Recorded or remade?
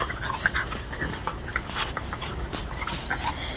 recorded